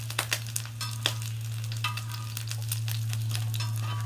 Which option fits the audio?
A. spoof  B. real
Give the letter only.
B